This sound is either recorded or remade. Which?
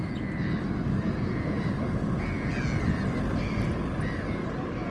recorded